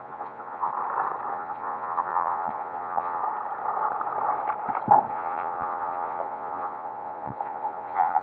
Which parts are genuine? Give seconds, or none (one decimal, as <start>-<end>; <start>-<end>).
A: 0.7-1.3; 3.2-5.1